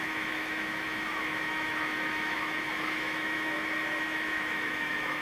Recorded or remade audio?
remade